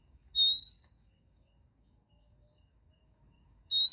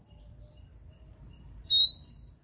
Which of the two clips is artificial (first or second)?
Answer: first